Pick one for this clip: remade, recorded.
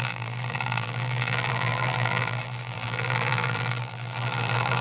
remade